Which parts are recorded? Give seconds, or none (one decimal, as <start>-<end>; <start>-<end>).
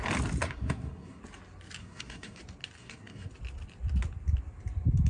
0.0-0.4; 1.2-1.8; 2.4-2.8; 3.3-5.1